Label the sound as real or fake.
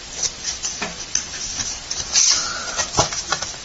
real